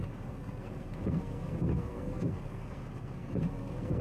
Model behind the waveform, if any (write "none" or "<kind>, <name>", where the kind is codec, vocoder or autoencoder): codec, SNAC